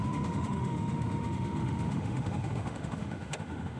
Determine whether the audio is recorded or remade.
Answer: remade